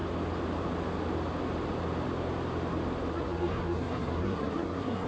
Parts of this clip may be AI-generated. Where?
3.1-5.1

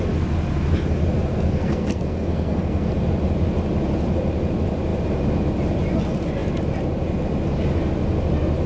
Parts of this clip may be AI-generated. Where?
1.3-2.9

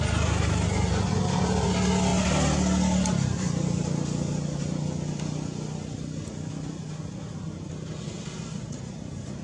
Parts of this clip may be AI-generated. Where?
none

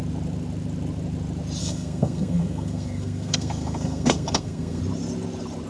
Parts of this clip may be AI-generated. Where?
1.6-4.8

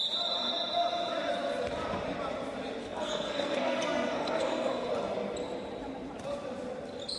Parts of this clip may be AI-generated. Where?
2.8-4.9

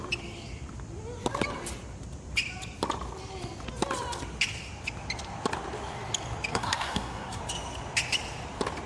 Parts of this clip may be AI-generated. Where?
6.5-7.4